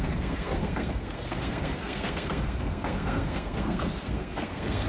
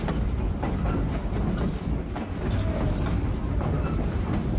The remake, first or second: first